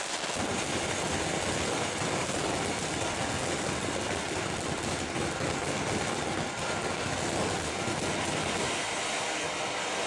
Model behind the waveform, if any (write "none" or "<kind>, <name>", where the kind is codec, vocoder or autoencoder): none